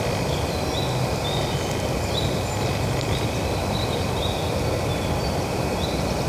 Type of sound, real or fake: real